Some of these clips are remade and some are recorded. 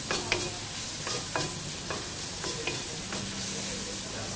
recorded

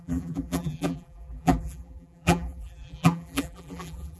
remade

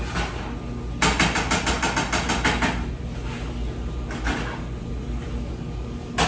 recorded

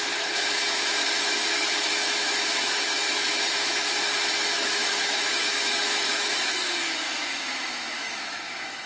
remade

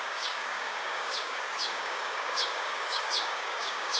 remade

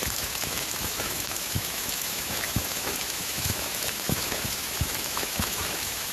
remade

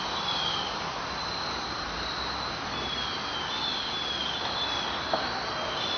recorded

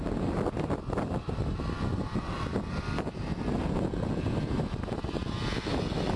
recorded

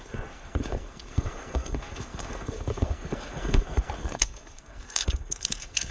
remade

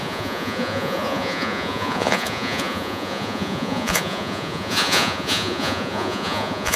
remade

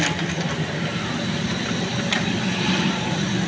recorded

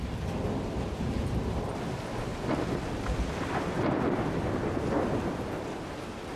recorded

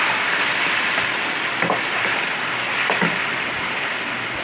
recorded